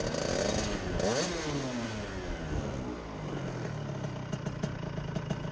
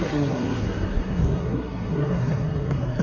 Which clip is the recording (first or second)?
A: first